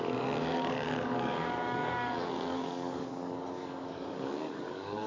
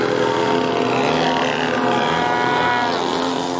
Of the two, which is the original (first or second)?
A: second